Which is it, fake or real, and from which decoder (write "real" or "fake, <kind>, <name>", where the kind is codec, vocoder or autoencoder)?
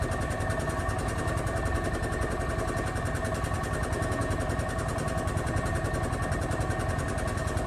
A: real